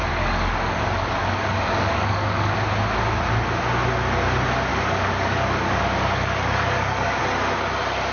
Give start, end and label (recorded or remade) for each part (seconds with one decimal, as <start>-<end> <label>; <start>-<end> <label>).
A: 0.0-2.5 remade; 2.5-4.7 recorded; 4.7-7.2 remade; 7.2-8.1 recorded